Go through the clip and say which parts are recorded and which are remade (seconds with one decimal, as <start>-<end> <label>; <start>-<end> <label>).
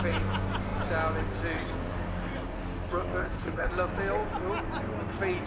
0.0-3.2 recorded; 3.2-3.7 remade; 3.7-5.5 recorded